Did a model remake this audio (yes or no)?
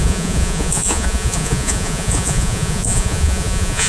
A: yes